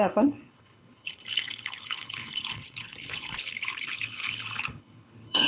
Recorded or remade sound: remade